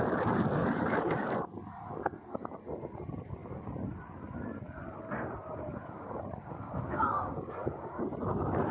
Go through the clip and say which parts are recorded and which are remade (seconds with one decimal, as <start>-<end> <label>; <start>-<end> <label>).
0.0-0.6 recorded; 0.6-1.5 remade; 1.5-5.4 recorded; 5.4-6.5 remade; 6.5-7.6 recorded; 7.6-8.7 remade